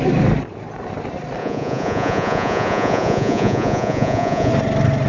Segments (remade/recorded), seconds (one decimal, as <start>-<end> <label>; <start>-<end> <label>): 0.0-1.4 recorded; 1.4-4.5 remade; 4.5-5.1 recorded

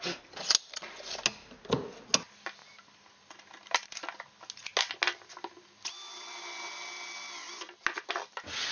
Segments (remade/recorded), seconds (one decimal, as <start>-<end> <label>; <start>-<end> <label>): 0.0-8.7 recorded

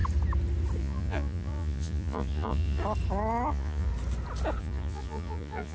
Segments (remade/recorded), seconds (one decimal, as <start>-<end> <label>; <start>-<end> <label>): 0.0-0.8 recorded; 0.8-2.8 remade; 2.8-3.5 recorded; 3.5-3.9 remade; 3.9-4.6 recorded; 4.6-5.7 remade

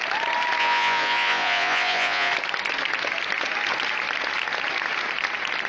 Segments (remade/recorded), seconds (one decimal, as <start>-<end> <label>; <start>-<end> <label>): 0.0-0.6 recorded; 0.6-2.3 remade; 2.3-5.7 recorded

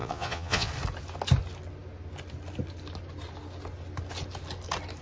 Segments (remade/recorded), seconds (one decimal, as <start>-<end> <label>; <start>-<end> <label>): 0.0-0.7 remade; 0.7-5.0 recorded

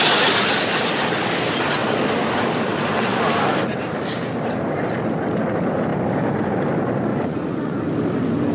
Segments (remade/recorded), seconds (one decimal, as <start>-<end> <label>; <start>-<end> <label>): 0.0-7.1 recorded; 7.1-7.8 remade; 7.8-8.5 recorded

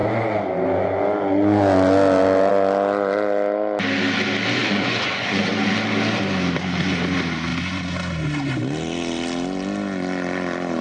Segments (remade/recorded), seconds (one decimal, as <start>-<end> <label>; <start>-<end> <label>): 0.0-4.6 recorded; 4.6-5.5 remade; 5.5-10.8 recorded